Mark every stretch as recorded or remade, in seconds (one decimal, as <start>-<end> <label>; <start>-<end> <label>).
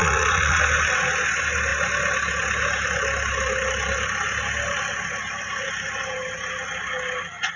0.0-0.6 remade; 0.6-7.6 recorded